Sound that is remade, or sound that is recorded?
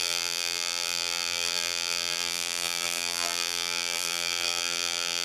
remade